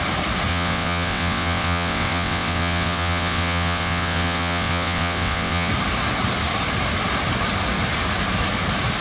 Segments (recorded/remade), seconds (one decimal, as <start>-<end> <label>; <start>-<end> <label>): 0.0-0.5 recorded; 0.5-5.7 remade; 5.7-9.0 recorded